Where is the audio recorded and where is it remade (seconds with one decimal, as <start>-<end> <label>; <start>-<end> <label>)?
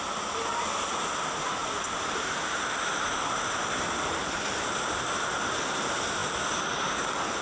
0.0-7.4 recorded